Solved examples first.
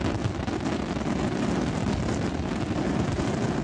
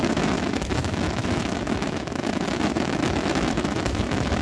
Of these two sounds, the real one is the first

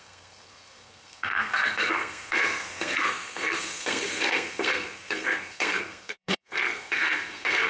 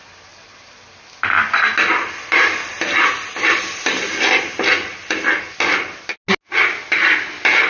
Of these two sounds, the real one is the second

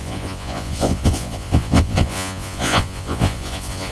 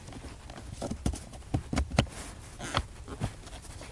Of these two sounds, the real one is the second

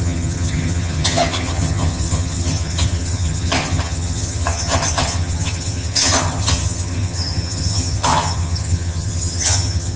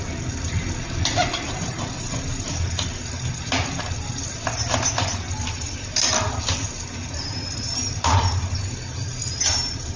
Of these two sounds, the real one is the second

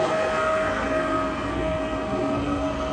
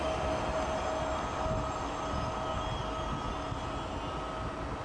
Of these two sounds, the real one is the second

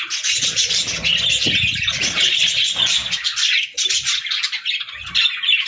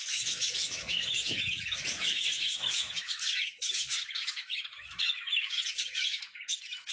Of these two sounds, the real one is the first